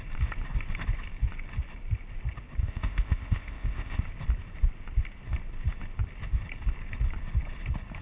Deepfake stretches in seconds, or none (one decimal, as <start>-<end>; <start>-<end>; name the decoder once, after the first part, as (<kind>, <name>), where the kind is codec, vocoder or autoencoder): 2.6-4.0 (codec, ZipCodec)